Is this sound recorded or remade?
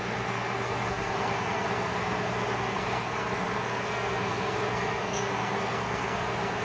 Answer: remade